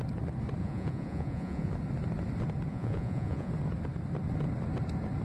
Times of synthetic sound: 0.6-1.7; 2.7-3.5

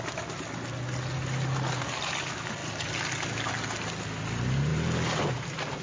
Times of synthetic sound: none

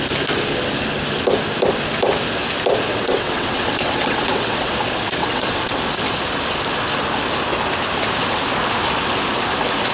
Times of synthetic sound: 2.9-4.7; 5.2-5.8

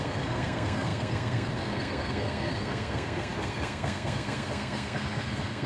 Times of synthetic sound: 0.0-5.7

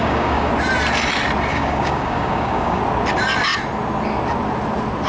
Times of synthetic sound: 0.0-0.5; 1.5-2.8

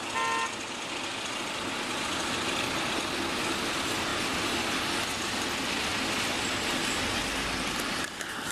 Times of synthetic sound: none